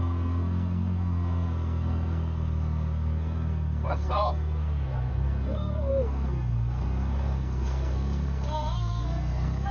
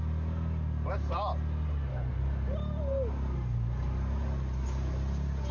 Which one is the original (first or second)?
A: second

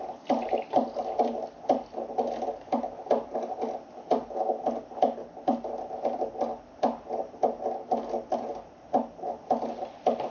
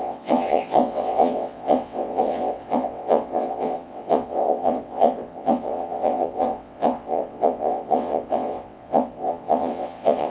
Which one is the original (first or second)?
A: first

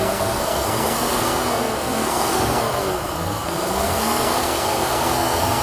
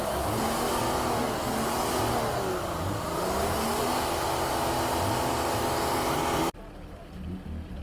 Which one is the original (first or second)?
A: second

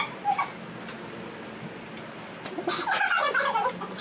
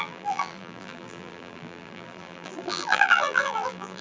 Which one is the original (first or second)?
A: first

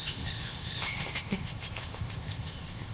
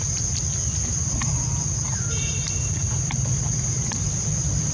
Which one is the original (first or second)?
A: second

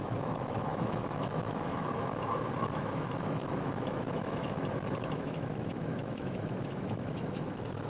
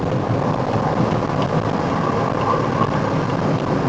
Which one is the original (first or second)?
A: second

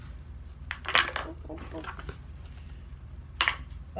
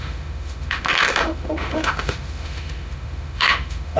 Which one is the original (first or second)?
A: first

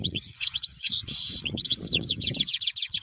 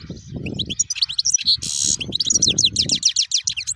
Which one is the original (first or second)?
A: second